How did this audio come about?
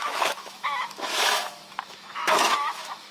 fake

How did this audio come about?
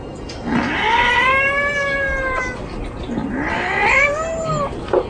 real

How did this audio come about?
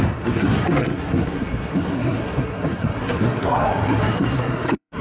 fake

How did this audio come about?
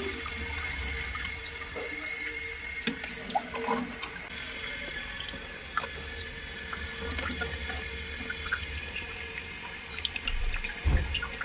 real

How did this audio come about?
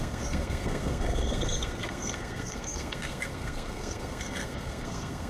fake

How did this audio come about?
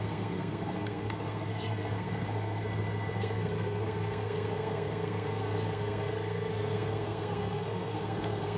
fake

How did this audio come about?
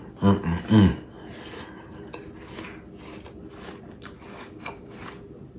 real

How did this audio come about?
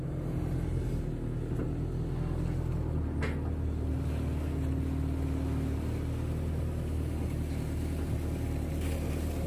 real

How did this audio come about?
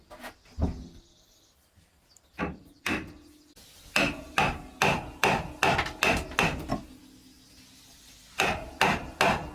real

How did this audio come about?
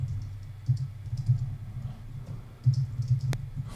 real